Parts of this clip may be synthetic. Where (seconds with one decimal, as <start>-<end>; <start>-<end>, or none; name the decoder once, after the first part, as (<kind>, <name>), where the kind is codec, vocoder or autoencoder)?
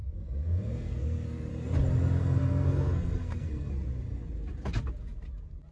0.0-1.5 (codec, SNAC); 2.2-3.7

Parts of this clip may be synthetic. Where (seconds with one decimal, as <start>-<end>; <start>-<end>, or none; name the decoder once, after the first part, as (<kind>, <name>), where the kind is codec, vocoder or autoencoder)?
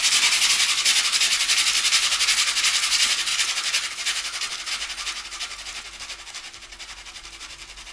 none